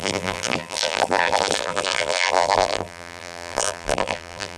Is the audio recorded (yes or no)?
no